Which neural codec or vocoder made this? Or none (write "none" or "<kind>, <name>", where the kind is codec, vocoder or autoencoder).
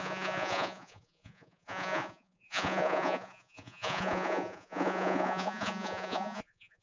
vocoder, Vocos